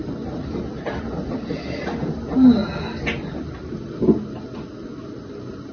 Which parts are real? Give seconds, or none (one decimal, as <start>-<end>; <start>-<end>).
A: 0.0-5.7